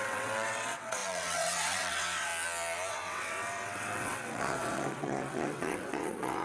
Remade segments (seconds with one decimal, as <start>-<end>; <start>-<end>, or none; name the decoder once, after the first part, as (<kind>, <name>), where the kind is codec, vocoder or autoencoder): 0.0-2.3 (vocoder, WaveNeXt); 2.9-6.4